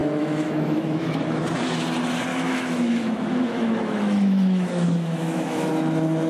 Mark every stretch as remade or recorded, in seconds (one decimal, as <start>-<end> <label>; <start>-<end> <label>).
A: 0.0-1.4 remade; 1.4-2.3 recorded; 2.3-5.7 remade; 5.7-6.3 recorded